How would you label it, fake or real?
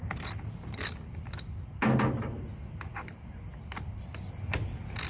real